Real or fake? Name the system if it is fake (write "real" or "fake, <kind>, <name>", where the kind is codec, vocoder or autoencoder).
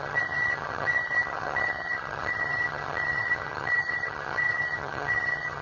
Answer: fake, vocoder, HiFi-GAN